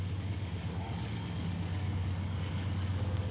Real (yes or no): no